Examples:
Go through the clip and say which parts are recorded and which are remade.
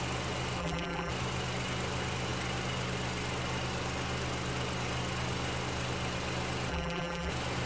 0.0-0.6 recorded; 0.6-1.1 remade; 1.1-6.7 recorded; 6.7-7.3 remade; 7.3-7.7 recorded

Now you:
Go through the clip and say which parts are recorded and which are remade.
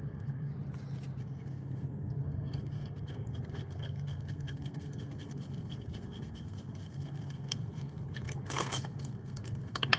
0.0-0.5 remade; 0.5-1.2 recorded; 1.2-10.0 remade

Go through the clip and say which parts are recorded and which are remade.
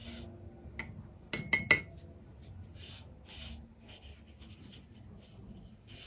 0.0-5.3 recorded; 5.3-6.1 remade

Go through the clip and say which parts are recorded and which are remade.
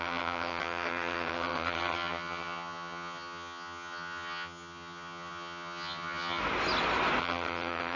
0.0-6.4 remade; 6.4-7.2 recorded; 7.2-8.0 remade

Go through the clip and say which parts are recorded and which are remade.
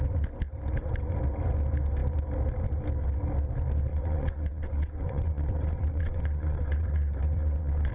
0.0-3.9 recorded; 3.9-7.9 remade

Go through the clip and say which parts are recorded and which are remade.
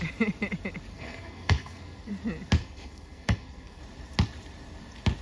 0.0-0.9 recorded; 0.9-2.1 remade; 2.1-2.6 recorded; 2.6-3.8 remade; 3.8-5.2 recorded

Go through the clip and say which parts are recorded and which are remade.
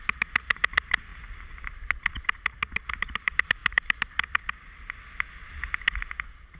0.0-1.1 recorded; 1.1-1.7 remade; 1.7-3.6 recorded; 3.6-4.5 remade; 4.5-6.6 recorded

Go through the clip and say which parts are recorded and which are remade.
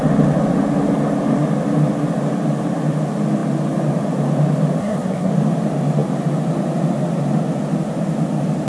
0.0-4.8 recorded; 4.8-5.3 remade; 5.3-8.7 recorded